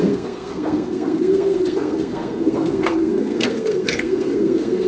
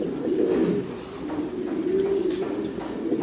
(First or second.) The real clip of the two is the second